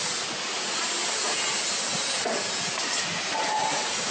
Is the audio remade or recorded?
recorded